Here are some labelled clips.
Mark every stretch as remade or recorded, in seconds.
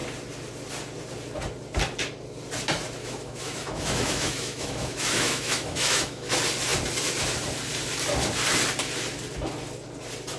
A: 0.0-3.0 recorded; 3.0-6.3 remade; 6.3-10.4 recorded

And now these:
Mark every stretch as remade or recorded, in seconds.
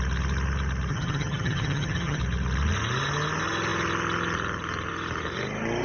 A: 0.0-0.9 recorded; 0.9-2.2 remade; 2.2-5.8 recorded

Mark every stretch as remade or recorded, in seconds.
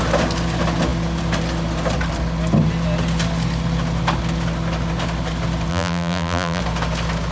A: 0.0-5.7 recorded; 5.7-6.6 remade; 6.6-7.3 recorded